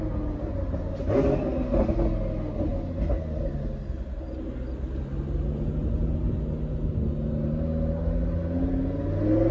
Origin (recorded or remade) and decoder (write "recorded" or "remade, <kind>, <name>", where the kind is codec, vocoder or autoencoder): recorded